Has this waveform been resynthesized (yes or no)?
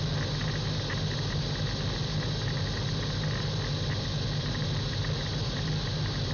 no